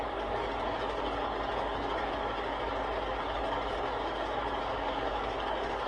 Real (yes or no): no